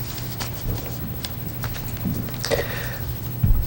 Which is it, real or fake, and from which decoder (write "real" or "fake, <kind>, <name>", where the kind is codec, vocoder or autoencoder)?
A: real